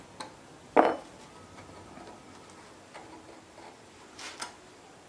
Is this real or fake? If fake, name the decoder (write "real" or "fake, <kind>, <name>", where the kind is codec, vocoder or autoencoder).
real